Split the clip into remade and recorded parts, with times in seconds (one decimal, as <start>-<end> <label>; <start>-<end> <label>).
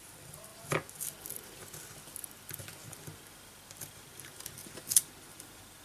0.0-0.5 remade; 0.5-3.3 recorded; 3.3-4.6 remade; 4.6-5.3 recorded; 5.3-5.8 remade